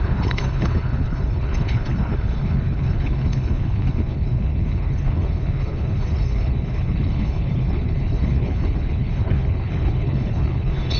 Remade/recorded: remade